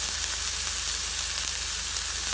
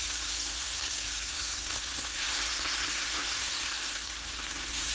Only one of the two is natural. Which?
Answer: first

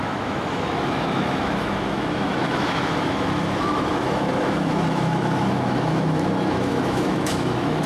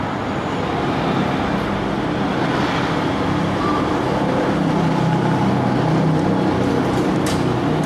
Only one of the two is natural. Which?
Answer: second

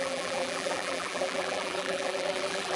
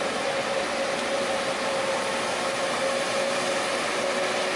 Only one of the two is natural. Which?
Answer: second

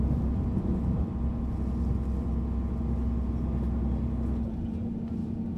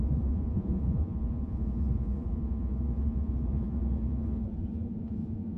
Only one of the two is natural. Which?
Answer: first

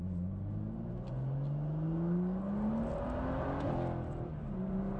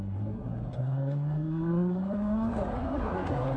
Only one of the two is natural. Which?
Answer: first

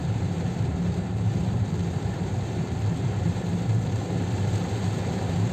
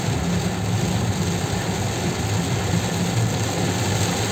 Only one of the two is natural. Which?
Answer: second